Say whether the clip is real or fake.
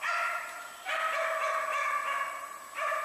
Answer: real